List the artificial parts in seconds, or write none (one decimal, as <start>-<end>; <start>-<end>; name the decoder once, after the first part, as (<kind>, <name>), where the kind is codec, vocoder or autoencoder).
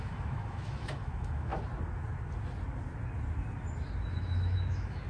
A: 0.0-1.5 (autoencoder, DAC-VAE); 4.1-5.1